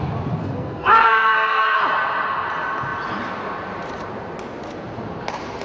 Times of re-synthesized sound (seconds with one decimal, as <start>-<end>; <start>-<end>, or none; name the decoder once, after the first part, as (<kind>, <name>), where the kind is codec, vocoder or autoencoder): 0.4-1.8 (codec, SNAC)